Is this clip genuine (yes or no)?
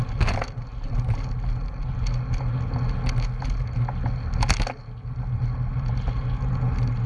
yes